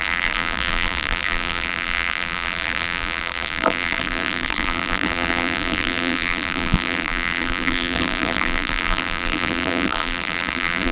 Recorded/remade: remade